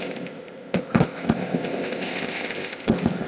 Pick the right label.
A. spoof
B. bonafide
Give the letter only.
A